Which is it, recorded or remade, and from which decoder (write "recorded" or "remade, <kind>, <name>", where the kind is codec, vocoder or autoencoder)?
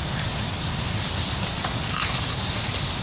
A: recorded